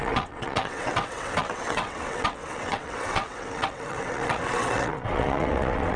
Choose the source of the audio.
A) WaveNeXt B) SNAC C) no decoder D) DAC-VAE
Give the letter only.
A